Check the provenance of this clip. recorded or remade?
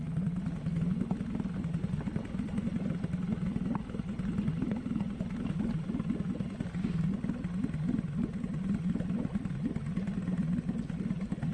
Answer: recorded